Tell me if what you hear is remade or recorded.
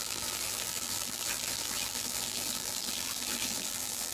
remade